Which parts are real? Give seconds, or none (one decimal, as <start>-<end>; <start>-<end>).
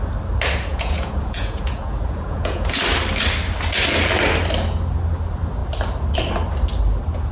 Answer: 0.0-0.7; 2.8-7.3